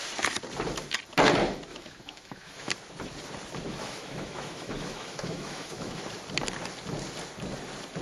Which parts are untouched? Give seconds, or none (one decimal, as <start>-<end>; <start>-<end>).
0.0-1.7; 2.7-3.7; 6.0-8.0